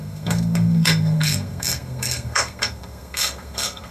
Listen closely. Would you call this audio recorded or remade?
remade